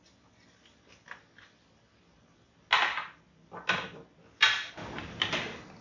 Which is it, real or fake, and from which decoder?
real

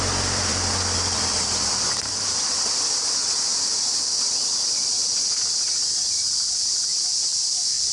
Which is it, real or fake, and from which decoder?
fake, vocoder, BigVGAN v2